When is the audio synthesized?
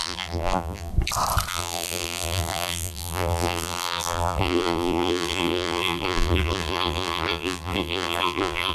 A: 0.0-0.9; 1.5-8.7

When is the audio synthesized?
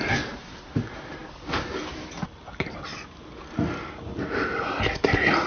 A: none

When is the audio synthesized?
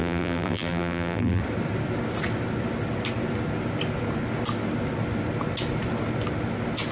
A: 0.0-1.4